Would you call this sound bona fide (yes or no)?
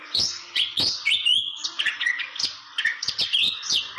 no